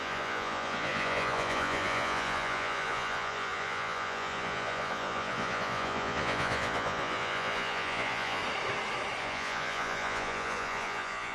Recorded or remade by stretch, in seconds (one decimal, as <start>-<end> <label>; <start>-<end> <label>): 0.0-8.4 remade; 8.4-9.2 recorded; 9.2-11.3 remade